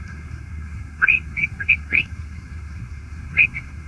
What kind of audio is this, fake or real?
fake